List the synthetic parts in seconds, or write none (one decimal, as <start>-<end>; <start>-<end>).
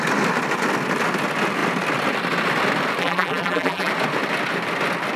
3.0-3.9